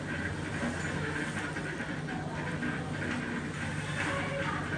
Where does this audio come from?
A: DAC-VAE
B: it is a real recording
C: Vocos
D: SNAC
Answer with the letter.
B